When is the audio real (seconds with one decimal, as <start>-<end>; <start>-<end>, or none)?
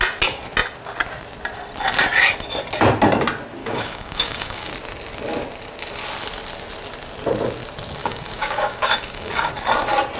0.0-3.6; 4.7-8.0; 9.5-10.2